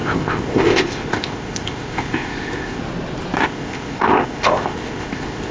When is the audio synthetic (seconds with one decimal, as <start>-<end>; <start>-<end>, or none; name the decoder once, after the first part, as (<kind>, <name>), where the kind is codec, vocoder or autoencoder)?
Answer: 0.0-2.8 (codec, ZipCodec); 3.4-5.5